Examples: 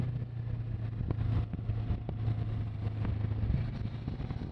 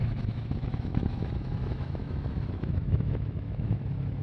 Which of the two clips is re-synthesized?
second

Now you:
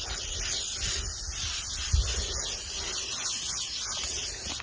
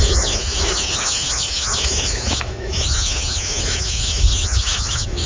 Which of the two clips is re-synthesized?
second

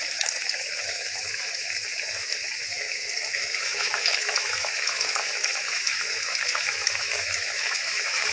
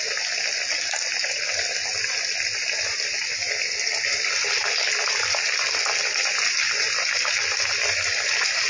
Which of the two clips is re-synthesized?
first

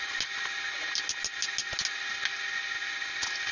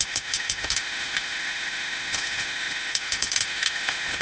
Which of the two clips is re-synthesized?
second